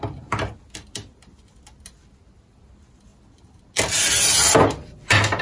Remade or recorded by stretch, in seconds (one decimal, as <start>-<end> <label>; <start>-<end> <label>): 0.0-5.4 recorded